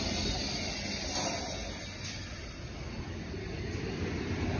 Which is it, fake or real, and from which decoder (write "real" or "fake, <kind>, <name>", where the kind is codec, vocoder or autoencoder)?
real